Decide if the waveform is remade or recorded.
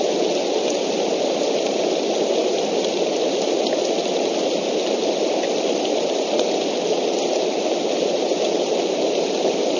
recorded